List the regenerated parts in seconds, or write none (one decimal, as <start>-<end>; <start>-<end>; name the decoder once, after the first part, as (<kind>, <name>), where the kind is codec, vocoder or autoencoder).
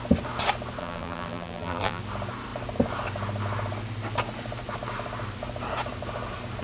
0.8-2.0 (vocoder, BigVGAN v2)